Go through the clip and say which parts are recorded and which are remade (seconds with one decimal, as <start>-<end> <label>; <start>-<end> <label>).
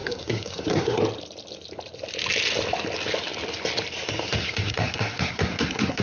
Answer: 0.0-1.0 remade; 1.0-4.4 recorded; 4.4-6.0 remade